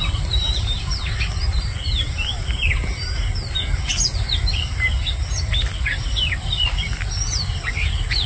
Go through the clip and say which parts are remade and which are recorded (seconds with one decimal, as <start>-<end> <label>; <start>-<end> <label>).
0.0-8.3 recorded